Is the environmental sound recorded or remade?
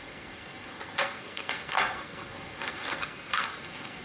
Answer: remade